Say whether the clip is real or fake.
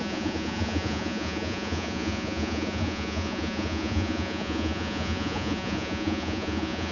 fake